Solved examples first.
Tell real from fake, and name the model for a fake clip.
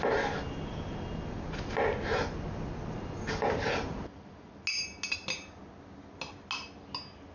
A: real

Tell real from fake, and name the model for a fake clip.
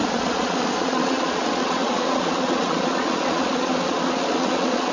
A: fake, vocoder, Vocos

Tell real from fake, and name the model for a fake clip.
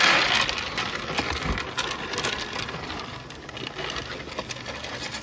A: real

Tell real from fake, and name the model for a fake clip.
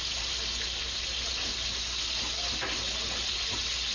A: real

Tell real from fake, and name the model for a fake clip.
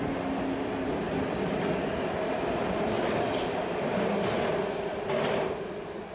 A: real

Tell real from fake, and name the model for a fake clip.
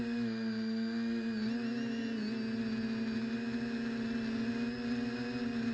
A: real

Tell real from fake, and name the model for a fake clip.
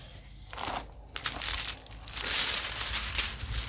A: real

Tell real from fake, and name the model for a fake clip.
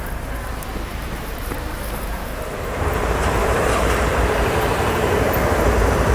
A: fake, vocoder, BigVGAN v2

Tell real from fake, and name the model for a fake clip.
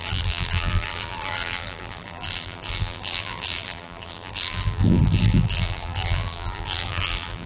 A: fake, vocoder, BigVGAN v2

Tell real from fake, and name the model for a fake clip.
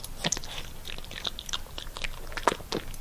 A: real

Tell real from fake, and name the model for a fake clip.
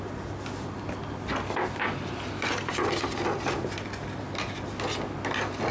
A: real